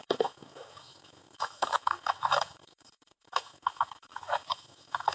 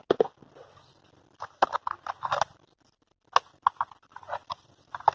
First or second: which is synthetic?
first